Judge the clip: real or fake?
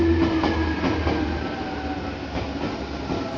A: real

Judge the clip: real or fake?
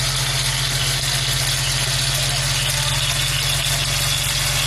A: real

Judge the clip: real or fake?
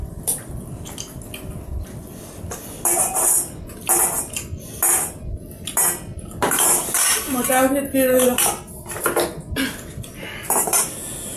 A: real